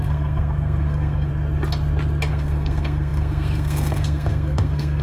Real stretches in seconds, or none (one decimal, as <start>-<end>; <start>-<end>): 1.3-2.3